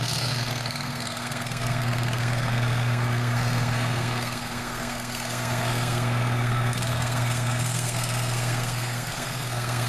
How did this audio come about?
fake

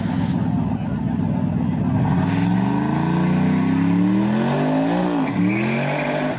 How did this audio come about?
real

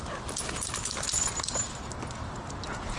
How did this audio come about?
real